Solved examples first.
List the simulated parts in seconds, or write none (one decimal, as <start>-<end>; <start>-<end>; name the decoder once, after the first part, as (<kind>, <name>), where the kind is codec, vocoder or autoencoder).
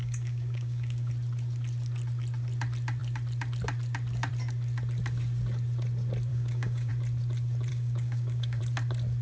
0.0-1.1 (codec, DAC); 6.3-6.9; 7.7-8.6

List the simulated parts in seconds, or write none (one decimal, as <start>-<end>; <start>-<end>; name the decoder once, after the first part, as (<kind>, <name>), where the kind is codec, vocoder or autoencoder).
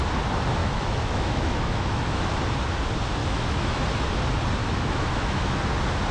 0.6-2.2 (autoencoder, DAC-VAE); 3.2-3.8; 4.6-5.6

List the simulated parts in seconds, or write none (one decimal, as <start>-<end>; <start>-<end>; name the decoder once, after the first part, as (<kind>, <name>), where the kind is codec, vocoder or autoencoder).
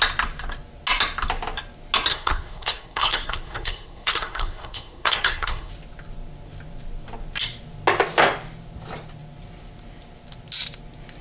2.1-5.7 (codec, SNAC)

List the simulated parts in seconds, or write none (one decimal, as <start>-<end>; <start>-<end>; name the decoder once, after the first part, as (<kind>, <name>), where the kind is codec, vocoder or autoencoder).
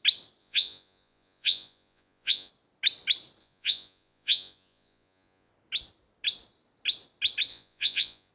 0.4-2.5 (vocoder, Vocos); 3.4-5.5; 7.5-8.3